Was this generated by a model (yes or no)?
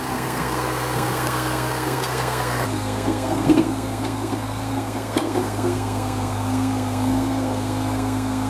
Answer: yes